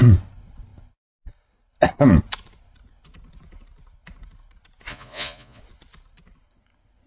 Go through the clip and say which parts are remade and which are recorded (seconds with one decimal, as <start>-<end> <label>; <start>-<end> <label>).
0.0-4.9 recorded; 4.9-5.6 remade; 5.6-7.1 recorded